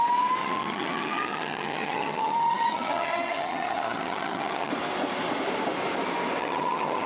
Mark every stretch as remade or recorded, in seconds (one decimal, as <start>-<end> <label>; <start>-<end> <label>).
0.0-0.4 recorded; 0.4-4.7 remade; 4.7-6.4 recorded; 6.4-7.1 remade